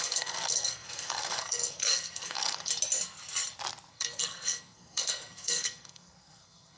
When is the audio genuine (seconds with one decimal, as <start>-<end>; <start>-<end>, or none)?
2.7-3.9